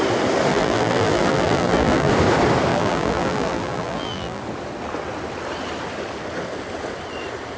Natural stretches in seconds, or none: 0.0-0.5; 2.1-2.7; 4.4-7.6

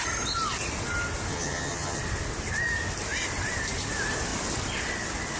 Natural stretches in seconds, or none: 0.0-1.3; 2.0-5.4

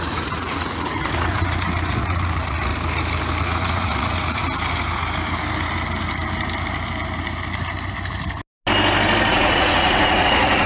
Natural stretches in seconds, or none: 2.7-3.4; 4.4-9.3

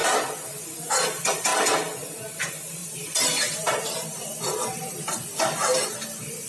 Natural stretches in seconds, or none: 0.0-1.0; 1.5-2.4

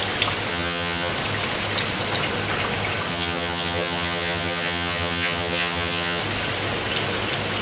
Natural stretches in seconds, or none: 0.0-0.5; 1.1-3.1; 6.2-7.6

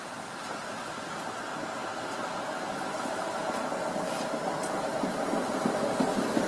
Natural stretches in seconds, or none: 0.0-6.5